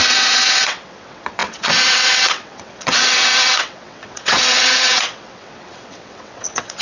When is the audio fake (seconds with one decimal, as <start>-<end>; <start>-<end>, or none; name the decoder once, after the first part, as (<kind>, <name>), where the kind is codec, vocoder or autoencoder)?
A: 0.0-6.8 (vocoder, WaveNeXt)